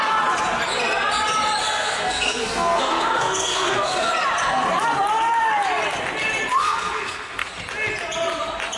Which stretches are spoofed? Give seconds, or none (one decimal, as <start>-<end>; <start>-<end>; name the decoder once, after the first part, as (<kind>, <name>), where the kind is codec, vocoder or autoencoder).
1.6-4.1 (codec, SNAC); 6.6-7.5